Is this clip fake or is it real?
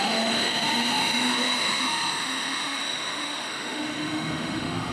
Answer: fake